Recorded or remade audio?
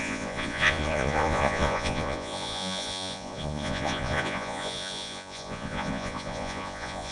remade